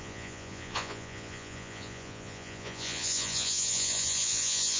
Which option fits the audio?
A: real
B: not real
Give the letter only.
B